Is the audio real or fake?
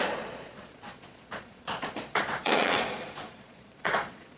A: fake